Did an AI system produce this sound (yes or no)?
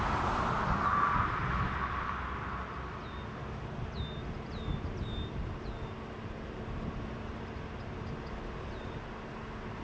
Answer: no